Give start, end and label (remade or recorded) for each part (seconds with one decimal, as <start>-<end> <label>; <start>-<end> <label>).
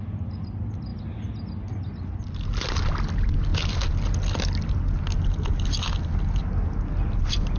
0.0-7.6 recorded